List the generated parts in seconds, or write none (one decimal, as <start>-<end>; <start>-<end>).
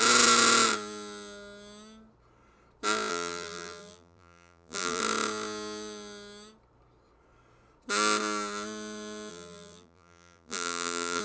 3.1-5.0; 9.3-11.2